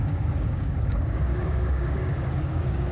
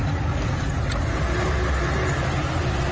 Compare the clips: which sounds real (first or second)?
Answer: second